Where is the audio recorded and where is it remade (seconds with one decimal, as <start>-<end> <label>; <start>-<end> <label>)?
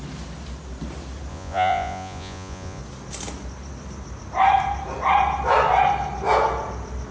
0.0-1.3 recorded; 1.3-2.8 remade; 2.8-7.1 recorded